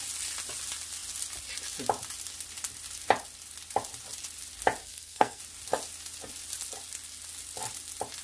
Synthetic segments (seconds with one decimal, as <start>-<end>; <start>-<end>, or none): 4.8-5.4